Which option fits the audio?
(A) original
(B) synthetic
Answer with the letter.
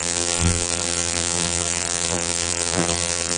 B